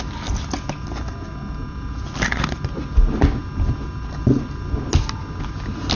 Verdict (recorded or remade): recorded